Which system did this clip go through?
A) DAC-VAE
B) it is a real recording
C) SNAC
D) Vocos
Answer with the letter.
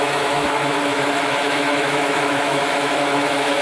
A